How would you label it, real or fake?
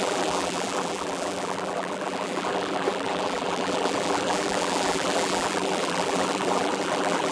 fake